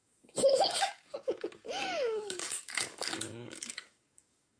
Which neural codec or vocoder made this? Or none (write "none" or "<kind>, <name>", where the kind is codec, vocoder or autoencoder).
codec, DAC